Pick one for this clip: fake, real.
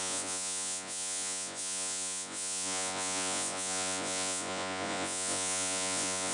fake